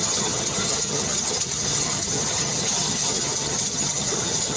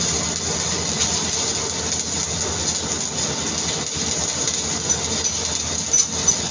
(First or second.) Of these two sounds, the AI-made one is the first